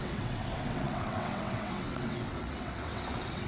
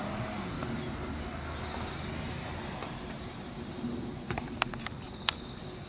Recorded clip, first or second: second